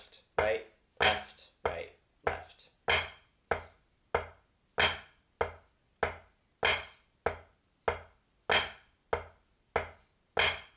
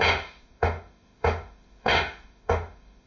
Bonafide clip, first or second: first